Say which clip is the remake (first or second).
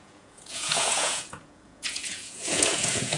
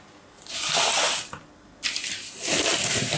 first